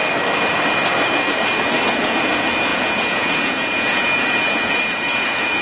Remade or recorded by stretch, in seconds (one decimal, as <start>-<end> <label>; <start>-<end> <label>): 0.0-1.9 recorded; 1.9-5.6 remade